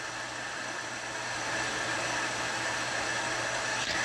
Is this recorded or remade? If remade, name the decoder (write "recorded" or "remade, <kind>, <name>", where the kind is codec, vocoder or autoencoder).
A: recorded